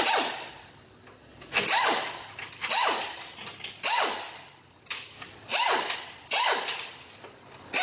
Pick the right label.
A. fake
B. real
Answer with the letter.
B